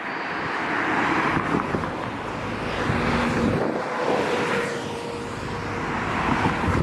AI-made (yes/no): no